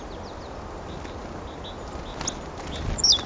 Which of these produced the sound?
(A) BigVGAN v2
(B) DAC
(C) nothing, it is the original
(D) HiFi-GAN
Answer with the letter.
C